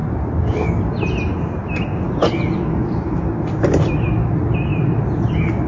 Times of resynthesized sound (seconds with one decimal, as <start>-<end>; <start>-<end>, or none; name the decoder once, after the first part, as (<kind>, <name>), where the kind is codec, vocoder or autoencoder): none